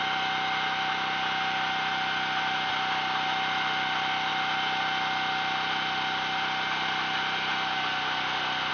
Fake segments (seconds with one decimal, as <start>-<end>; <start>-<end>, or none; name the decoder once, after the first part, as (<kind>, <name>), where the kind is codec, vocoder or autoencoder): none